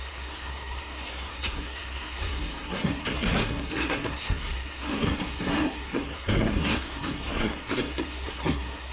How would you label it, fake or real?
fake